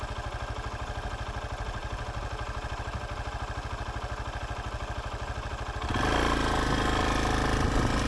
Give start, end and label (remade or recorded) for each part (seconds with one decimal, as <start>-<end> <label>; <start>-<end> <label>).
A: 0.0-8.1 recorded